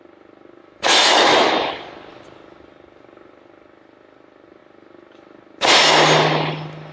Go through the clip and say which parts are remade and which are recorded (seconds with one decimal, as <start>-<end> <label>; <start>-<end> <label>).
0.0-0.6 recorded; 0.6-1.7 remade; 1.7-6.9 recorded